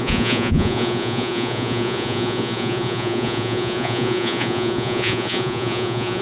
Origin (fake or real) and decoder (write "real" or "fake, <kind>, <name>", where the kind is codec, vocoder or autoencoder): fake, vocoder, Vocos